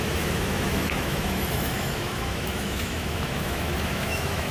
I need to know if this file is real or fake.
fake